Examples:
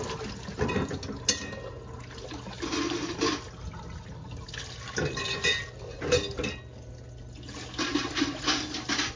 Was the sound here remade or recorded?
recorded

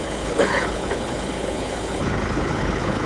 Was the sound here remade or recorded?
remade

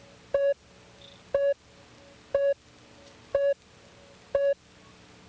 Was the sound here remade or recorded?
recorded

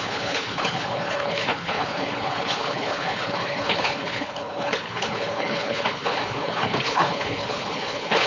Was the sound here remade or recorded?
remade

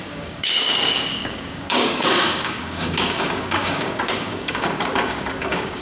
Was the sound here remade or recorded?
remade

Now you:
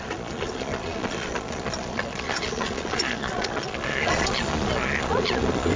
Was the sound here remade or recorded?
remade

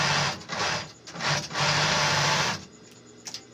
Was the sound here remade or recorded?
recorded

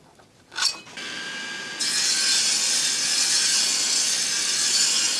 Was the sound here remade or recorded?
recorded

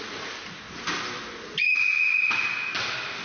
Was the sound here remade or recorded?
recorded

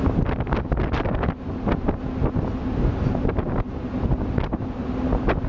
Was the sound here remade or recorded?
recorded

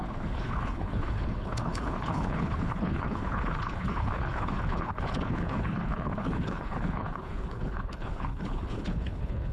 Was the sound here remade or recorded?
remade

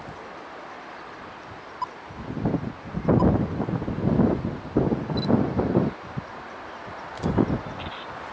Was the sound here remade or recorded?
recorded